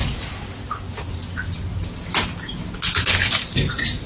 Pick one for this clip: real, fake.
real